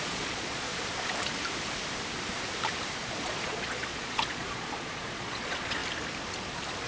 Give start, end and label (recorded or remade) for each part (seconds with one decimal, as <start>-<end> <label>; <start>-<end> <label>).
0.0-0.7 remade; 0.7-3.2 recorded; 3.2-5.8 remade; 5.8-6.9 recorded